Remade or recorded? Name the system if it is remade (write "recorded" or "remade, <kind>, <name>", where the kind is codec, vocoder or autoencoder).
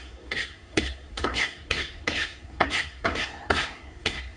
remade, codec, SNAC